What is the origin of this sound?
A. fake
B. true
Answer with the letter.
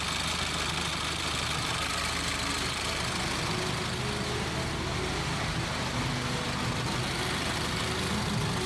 B